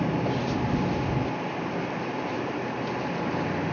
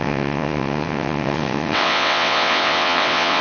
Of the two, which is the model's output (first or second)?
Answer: second